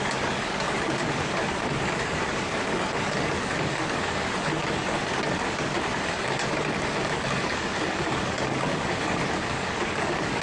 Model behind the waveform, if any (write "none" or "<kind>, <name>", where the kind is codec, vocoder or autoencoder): codec, DAC